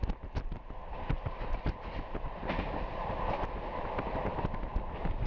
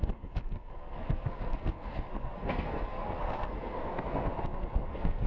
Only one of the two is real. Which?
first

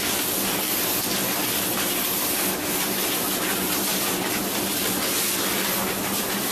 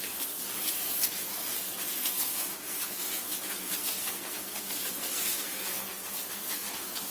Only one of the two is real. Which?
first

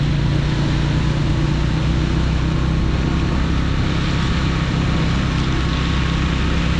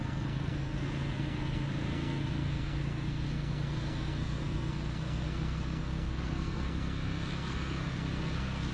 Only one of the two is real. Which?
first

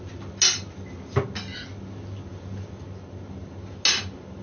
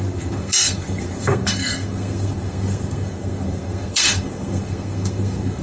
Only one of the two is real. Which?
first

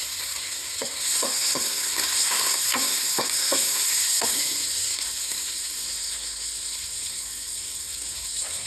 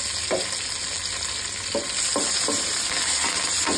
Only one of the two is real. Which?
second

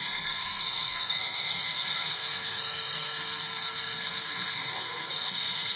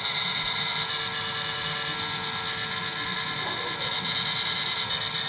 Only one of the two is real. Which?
second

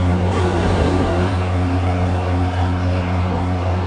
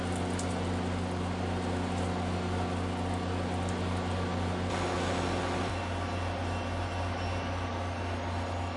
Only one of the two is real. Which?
second